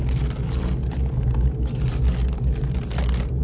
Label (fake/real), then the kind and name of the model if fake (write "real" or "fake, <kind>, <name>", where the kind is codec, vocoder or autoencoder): real